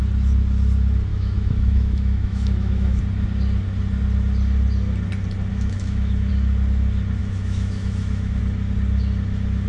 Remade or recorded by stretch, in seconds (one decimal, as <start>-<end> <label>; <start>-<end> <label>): 0.0-1.1 recorded; 1.1-3.0 remade; 3.0-5.5 recorded; 5.5-6.3 remade; 6.3-7.2 recorded; 7.2-8.4 remade; 8.4-9.7 recorded